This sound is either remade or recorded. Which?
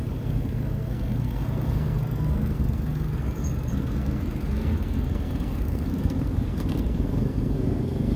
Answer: remade